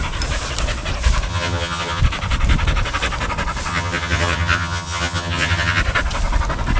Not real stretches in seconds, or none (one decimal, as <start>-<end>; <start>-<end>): 1.3-2.0; 3.7-5.8